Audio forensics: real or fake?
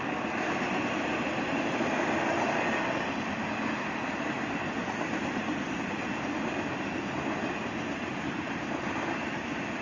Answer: real